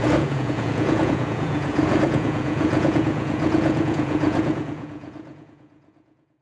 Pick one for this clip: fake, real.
fake